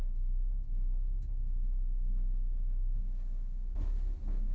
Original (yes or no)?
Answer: yes